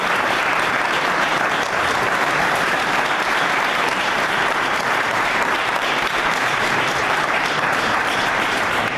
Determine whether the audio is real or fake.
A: fake